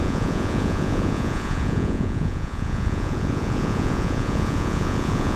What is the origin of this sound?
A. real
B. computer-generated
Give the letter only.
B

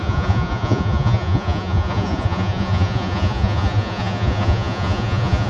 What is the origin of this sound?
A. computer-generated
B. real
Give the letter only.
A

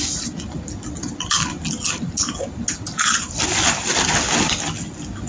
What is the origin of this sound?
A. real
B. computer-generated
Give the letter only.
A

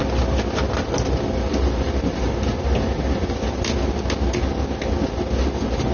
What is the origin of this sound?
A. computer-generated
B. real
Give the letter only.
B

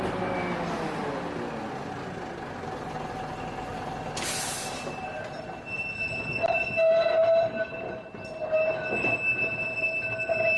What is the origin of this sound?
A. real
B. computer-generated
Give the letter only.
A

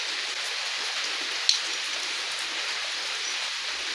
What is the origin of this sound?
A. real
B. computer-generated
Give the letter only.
A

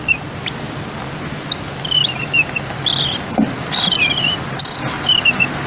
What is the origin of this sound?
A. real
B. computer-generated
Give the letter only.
A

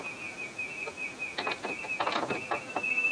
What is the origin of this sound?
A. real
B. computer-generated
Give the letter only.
A